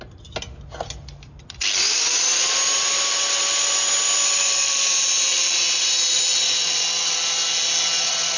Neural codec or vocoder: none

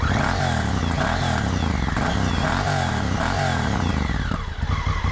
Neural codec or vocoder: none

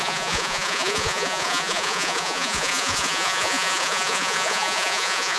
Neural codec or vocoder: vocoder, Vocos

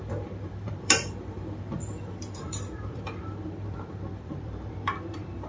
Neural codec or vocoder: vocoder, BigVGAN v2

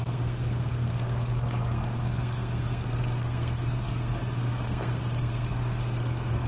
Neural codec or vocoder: codec, SNAC